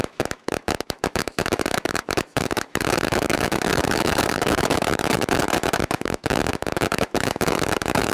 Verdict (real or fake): fake